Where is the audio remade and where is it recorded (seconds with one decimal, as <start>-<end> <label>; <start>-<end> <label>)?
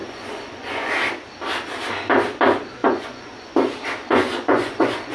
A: 0.0-0.9 remade; 0.9-2.8 recorded; 2.8-3.5 remade; 3.5-4.0 recorded; 4.0-5.1 remade